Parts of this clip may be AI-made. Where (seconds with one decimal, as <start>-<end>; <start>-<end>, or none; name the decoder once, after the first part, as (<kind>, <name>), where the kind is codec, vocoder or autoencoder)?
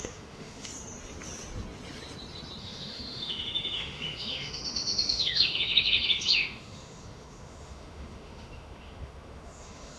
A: 0.0-0.7 (autoencoder, DAC-VAE); 2.6-10.0